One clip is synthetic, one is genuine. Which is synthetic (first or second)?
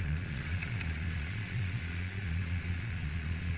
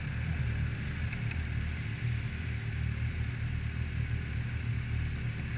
first